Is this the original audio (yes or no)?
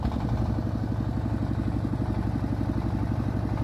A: yes